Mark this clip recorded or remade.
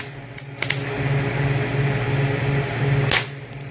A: recorded